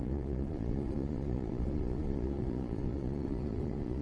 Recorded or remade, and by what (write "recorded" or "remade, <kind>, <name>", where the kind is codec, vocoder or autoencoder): remade, vocoder, Vocos